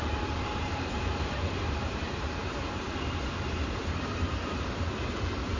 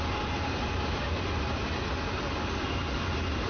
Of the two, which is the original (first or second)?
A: second